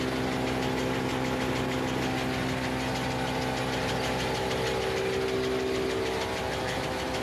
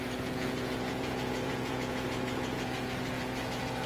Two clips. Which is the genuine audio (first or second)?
first